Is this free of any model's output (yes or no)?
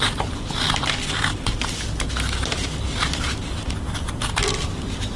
yes